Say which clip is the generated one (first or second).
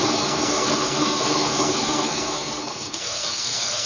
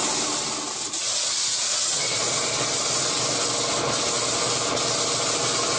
first